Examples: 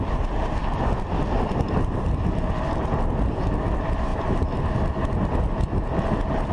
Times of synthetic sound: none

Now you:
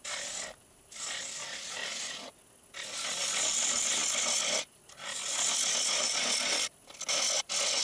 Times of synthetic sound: none

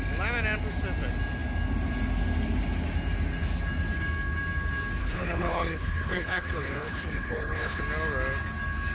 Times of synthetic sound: 5.0-7.8 (codec, HILCodec)

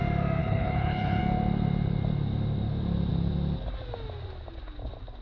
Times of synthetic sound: 0.4-1.2 (codec, HILCodec)